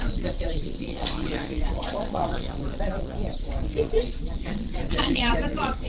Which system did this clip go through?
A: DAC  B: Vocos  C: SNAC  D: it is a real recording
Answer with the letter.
B